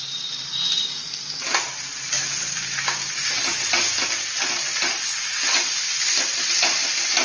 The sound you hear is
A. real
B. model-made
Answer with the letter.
A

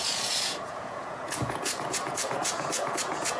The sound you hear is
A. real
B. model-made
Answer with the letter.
B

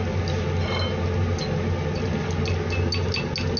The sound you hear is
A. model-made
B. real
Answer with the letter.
B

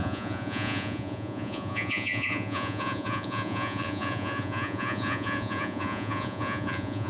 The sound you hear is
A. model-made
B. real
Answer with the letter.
A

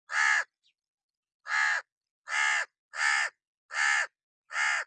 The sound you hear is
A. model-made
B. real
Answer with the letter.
B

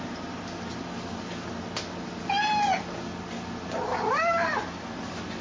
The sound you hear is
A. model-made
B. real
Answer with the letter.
B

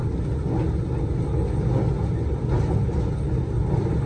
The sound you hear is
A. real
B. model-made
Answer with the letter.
A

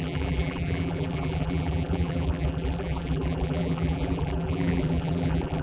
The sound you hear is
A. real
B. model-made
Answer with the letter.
B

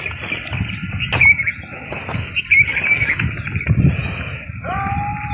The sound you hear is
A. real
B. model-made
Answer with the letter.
A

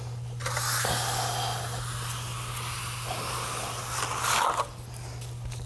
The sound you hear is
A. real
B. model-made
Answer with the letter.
A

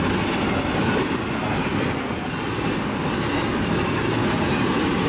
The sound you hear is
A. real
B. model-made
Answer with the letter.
A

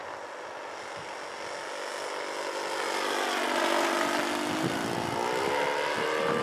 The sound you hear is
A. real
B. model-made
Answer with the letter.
A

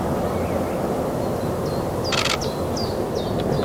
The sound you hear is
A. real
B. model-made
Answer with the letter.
A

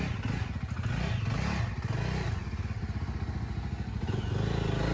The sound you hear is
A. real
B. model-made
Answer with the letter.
A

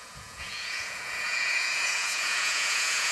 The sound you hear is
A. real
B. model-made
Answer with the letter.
B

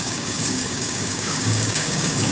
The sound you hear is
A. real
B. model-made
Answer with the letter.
B